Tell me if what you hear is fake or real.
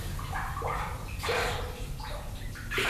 real